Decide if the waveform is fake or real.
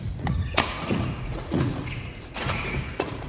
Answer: fake